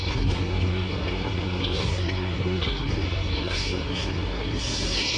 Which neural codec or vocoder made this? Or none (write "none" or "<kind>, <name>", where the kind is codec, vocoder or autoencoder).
codec, SNAC